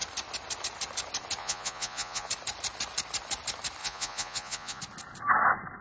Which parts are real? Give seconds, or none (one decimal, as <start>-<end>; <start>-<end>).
0.0-1.4; 2.3-3.8; 4.8-5.8